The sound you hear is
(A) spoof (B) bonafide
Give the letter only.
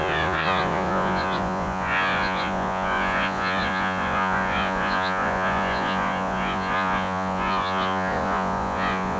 A